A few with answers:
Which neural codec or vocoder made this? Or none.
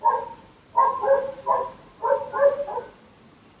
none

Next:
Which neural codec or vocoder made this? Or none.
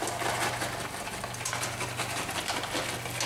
none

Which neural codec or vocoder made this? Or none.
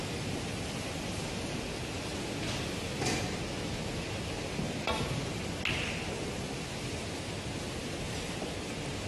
none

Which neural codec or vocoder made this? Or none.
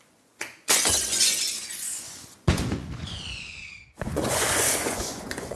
vocoder, Vocos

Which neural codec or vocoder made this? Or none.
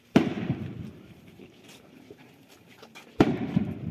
vocoder, BigVGAN v2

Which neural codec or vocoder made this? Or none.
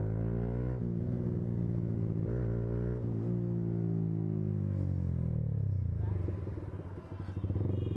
none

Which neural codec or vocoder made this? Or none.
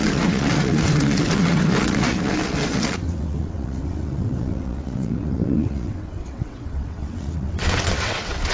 vocoder, WaveNeXt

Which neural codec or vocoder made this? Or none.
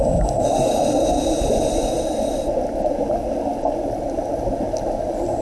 none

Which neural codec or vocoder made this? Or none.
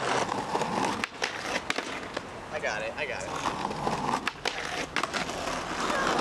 none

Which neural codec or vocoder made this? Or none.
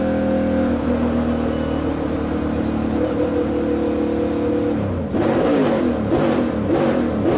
none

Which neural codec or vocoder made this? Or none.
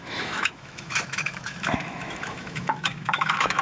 autoencoder, DAC-VAE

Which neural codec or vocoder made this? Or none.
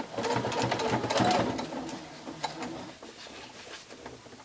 none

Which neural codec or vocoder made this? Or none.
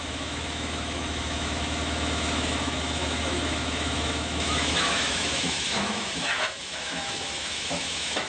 autoencoder, DAC-VAE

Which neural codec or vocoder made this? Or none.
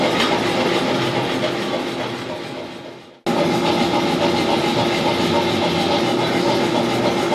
none